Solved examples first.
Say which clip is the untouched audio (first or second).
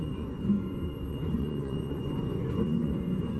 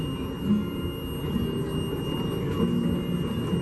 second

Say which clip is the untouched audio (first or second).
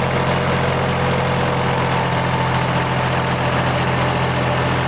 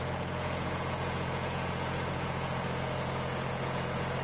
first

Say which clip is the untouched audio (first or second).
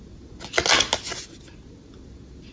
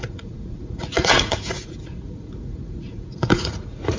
first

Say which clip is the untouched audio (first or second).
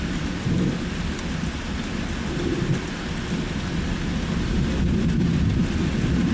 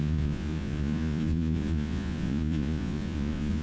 first